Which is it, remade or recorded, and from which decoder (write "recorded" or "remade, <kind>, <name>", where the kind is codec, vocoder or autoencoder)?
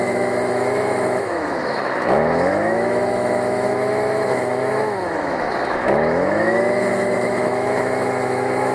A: remade, autoencoder, DAC-VAE